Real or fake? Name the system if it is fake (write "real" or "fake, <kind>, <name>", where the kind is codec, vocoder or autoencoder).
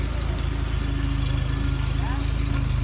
real